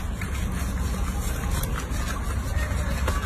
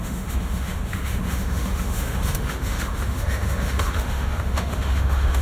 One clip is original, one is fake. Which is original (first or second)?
first